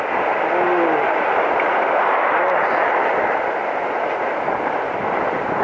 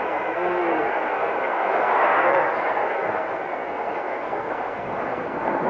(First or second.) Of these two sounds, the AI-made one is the second